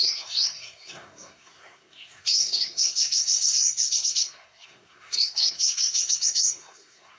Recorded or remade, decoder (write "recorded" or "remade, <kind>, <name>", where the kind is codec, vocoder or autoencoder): remade, codec, SNAC